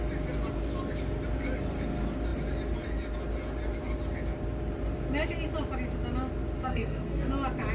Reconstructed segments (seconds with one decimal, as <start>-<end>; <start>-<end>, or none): 6.7-7.3

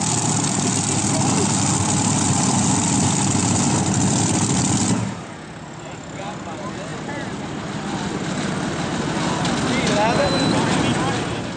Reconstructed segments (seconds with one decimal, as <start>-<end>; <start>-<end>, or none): none